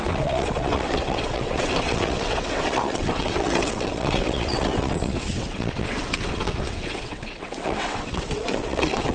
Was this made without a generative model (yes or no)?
no